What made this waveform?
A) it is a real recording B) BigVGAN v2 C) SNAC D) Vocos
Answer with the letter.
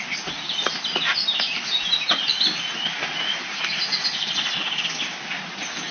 A